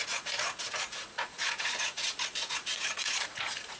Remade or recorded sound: remade